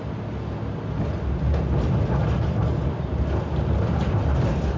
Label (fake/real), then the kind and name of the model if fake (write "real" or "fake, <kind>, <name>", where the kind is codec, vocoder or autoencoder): real